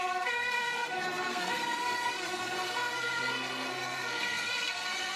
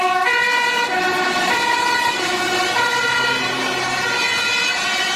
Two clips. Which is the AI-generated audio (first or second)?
first